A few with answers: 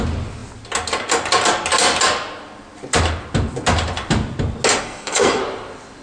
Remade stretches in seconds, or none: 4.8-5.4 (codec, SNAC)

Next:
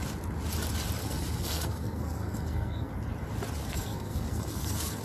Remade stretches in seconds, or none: 1.0-2.9 (codec, SNAC); 3.6-5.0

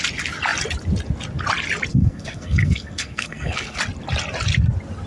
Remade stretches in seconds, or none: 1.9-3.8 (codec, SNAC)

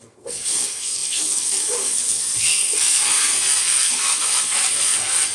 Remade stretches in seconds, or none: 0.0-5.3 (codec, SNAC)

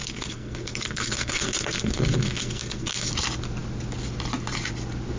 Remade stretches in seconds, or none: 0.0-3.1 (codec, SNAC)